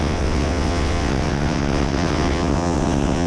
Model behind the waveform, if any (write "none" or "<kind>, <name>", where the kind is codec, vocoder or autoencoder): vocoder, WaveNeXt